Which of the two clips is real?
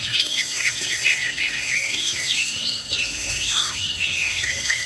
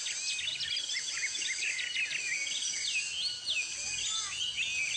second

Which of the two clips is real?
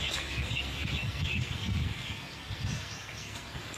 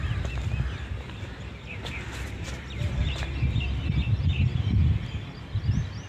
second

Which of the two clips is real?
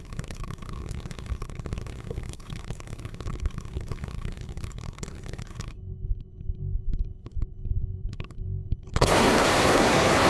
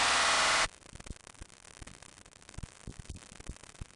second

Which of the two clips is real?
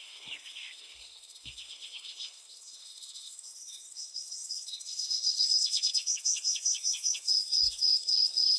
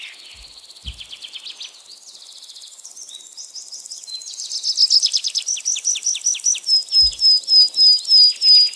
second